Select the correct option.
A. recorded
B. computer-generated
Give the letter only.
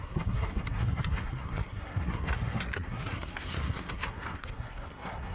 B